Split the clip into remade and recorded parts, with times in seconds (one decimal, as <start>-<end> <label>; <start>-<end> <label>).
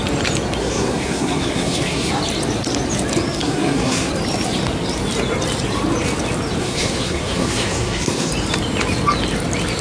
0.0-0.6 recorded; 0.6-2.1 remade; 2.1-3.4 recorded; 3.4-4.1 remade; 4.1-6.6 recorded; 6.6-8.3 remade; 8.3-9.8 recorded